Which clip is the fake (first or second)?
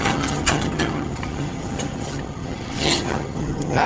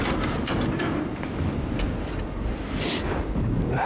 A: first